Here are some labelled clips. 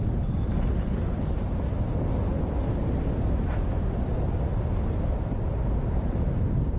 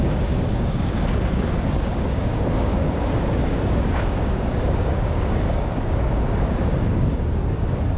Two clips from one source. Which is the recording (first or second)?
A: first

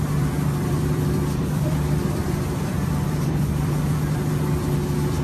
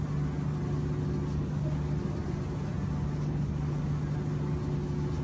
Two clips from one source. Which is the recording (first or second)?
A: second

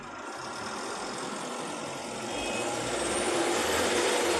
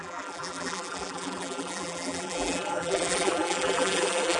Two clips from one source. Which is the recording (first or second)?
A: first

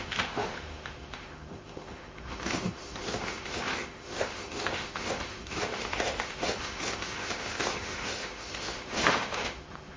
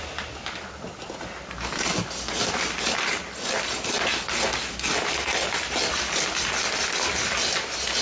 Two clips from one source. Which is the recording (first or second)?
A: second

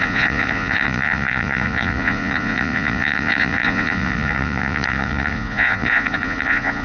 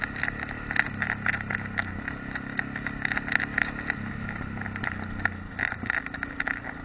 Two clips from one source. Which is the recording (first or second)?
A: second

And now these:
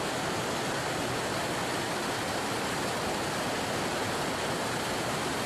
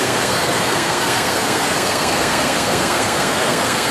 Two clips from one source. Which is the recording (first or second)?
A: first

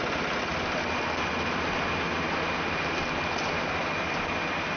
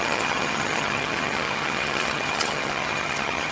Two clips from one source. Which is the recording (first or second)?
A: first